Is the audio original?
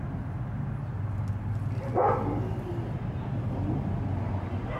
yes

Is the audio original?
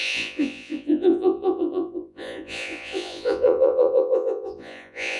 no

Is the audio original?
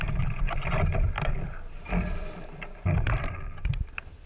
no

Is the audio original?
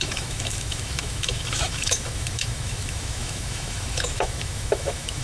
no